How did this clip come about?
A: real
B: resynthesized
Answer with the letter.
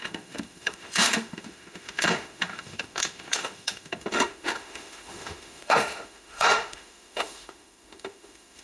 B